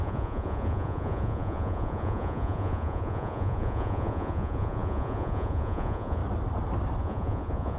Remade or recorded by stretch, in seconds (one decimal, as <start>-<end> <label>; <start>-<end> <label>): 0.0-6.2 remade; 6.2-7.0 recorded; 7.0-7.8 remade